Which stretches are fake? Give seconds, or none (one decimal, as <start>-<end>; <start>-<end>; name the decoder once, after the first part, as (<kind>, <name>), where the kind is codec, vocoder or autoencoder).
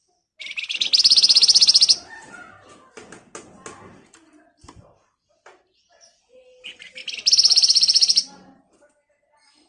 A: none